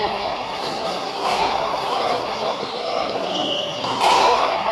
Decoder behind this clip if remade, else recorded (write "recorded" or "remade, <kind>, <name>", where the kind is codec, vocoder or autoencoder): remade, codec, SNAC